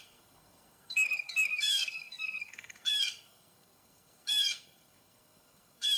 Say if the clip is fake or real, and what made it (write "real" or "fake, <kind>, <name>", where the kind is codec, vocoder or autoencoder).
fake, codec, SNAC